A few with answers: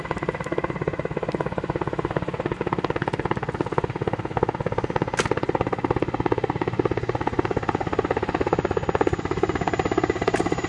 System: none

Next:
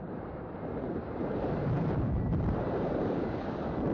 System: vocoder, BigVGAN v2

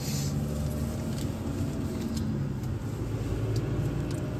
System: none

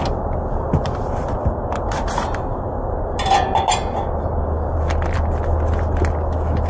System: none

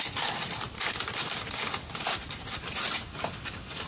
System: vocoder, BigVGAN v2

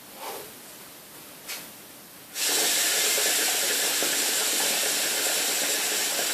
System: none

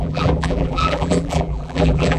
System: vocoder, BigVGAN v2